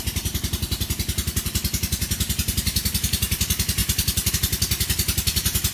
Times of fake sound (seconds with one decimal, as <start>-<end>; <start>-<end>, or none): none